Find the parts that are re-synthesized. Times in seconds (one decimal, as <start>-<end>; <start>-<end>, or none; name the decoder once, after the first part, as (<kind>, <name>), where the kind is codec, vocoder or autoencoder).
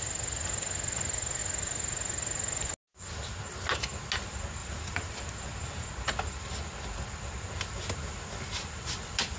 4.6-5.1 (vocoder, BigVGAN v2)